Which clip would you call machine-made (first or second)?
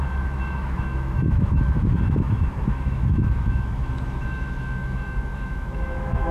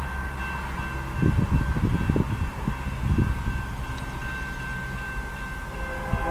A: first